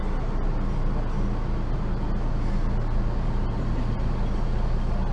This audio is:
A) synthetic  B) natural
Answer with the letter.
B